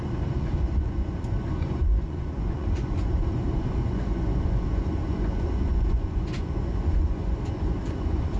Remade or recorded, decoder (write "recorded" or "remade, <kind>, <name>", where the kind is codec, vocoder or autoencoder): remade, vocoder, Vocos